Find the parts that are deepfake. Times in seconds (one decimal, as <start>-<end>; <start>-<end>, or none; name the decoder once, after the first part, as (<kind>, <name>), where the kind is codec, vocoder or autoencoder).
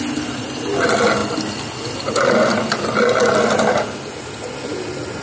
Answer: none